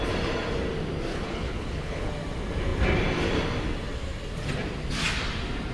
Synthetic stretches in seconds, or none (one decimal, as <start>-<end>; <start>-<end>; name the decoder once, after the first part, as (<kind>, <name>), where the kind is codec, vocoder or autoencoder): 1.1-2.1 (codec, HILCodec)